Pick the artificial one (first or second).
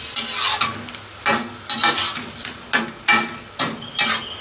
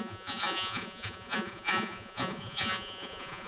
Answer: second